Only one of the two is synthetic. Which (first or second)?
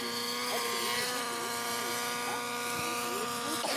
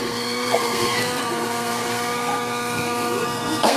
second